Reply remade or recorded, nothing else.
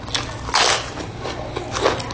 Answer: recorded